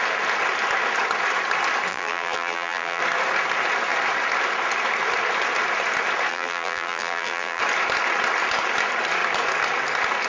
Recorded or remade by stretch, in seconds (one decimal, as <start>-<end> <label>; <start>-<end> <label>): 0.0-1.9 recorded; 1.9-3.0 remade; 3.0-6.3 recorded; 6.3-7.6 remade; 7.6-10.3 recorded